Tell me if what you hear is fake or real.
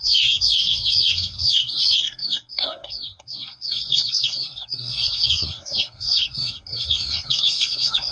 fake